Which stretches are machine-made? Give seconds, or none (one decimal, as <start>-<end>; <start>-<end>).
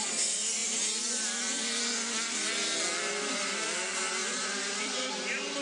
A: 4.2-5.1